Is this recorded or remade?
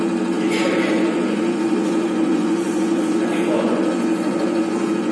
remade